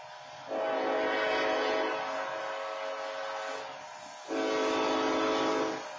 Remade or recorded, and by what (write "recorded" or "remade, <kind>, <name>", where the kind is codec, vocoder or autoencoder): recorded